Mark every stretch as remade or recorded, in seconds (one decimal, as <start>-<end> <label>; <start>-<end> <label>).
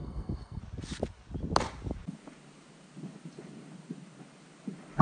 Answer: 0.0-0.6 remade; 0.6-5.0 recorded